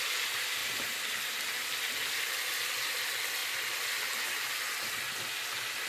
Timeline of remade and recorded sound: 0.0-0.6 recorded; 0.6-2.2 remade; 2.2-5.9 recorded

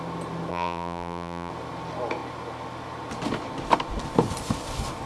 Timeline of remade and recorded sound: 0.0-0.5 recorded; 0.5-1.5 remade; 1.5-5.1 recorded

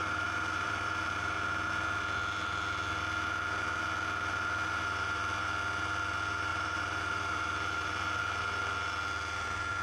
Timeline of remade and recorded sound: 0.0-1.3 remade; 1.3-6.5 recorded; 6.5-8.2 remade; 8.2-9.8 recorded

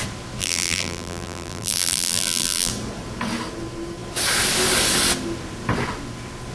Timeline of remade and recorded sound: 0.0-0.4 recorded; 0.4-2.7 remade; 2.7-6.5 recorded